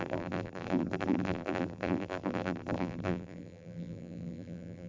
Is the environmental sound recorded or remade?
remade